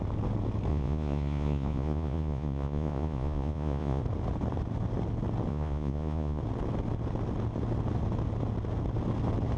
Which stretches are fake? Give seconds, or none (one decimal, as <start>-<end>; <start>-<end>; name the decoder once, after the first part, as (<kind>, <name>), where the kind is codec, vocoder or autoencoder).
0.7-4.0 (vocoder, Vocos); 5.5-6.4